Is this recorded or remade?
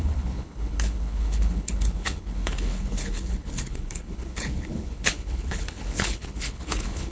remade